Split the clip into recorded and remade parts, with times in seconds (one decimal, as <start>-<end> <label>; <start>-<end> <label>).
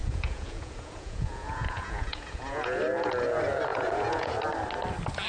0.0-2.8 remade; 2.8-3.7 recorded; 3.7-4.3 remade; 4.3-5.3 recorded